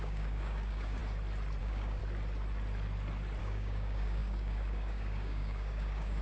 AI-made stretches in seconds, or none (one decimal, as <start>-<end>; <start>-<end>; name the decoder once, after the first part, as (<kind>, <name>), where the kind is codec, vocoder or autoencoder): 0.0-1.0 (codec, DAC); 1.6-2.0; 3.4-6.2